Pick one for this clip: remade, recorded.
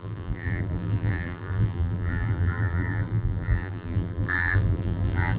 remade